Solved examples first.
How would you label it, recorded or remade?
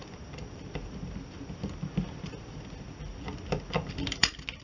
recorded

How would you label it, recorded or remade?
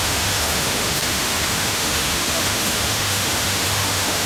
remade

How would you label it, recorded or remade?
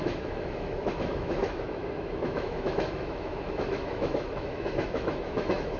remade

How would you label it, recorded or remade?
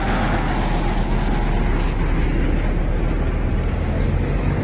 recorded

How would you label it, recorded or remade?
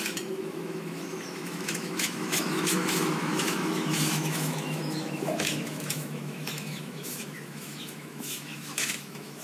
remade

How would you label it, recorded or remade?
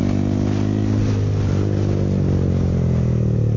recorded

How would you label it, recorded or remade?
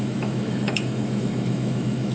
remade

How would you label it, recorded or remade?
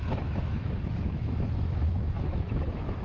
remade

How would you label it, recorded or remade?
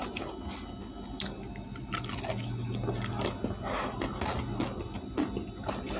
recorded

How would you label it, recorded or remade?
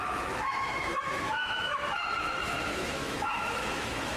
remade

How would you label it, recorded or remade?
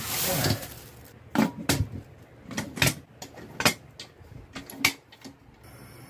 recorded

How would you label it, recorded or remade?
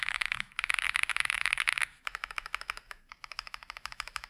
remade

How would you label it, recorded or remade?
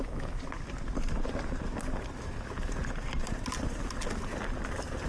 recorded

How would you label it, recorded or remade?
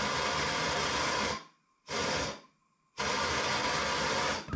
recorded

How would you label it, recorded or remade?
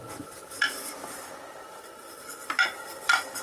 recorded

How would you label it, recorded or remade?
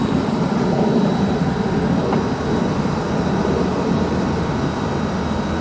recorded